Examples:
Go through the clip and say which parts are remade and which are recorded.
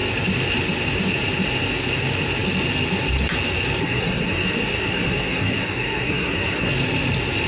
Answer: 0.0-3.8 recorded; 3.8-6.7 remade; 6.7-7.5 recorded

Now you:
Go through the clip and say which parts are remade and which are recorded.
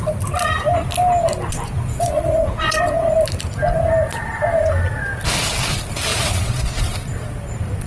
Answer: 0.0-1.9 recorded; 1.9-2.8 remade; 2.8-6.1 recorded; 6.1-6.8 remade; 6.8-7.9 recorded